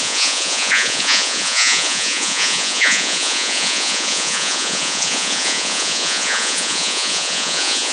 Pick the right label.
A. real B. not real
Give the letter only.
B